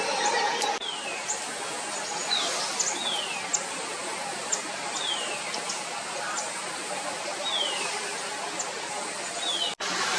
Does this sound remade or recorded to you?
recorded